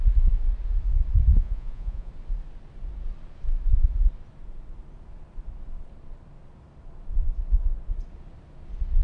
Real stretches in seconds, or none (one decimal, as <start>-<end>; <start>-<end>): 0.0-1.3; 2.1-9.0